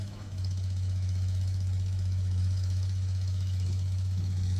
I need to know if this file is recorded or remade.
remade